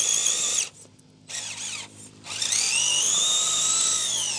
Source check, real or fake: real